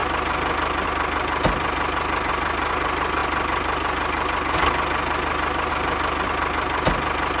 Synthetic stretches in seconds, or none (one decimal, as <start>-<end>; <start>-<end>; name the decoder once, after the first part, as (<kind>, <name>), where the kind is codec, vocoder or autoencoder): none